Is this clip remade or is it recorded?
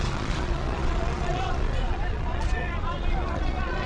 remade